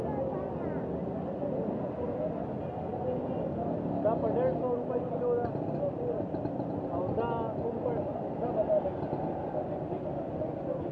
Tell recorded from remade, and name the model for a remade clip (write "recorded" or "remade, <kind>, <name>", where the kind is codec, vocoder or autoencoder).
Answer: recorded